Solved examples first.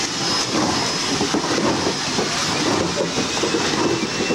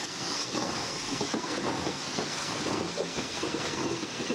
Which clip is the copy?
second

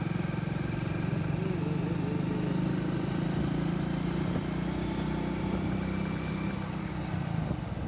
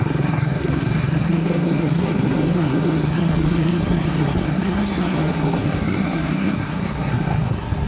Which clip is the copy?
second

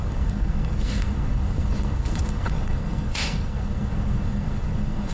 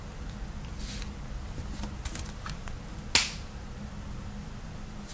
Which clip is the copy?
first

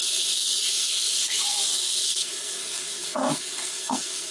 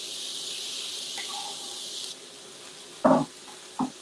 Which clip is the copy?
first